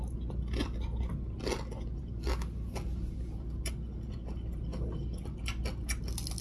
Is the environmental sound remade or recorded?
recorded